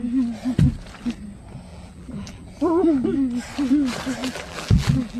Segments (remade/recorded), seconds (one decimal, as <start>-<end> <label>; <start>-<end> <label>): 0.0-1.7 recorded; 1.7-2.5 remade; 2.5-4.2 recorded; 4.2-5.2 remade

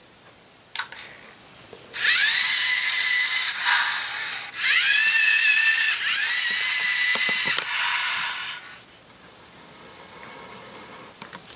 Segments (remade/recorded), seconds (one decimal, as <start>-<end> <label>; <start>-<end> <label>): 0.0-3.7 remade; 3.7-7.1 recorded; 7.1-8.5 remade; 8.5-11.6 recorded

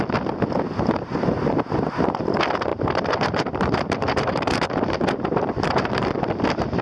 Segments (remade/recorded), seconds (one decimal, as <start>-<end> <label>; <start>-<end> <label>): 0.0-2.7 recorded; 2.7-6.8 remade